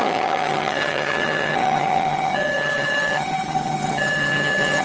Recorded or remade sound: remade